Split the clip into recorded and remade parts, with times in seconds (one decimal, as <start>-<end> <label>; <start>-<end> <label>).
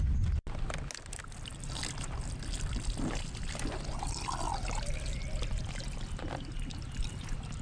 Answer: 0.0-7.6 recorded